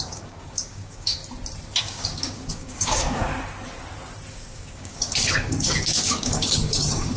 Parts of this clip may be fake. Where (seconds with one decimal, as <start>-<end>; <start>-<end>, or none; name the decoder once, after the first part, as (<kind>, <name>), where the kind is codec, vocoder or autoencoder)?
0.0-1.2 (codec, DAC); 1.8-3.3; 4.3-7.2